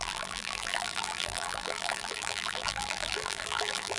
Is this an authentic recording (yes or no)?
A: no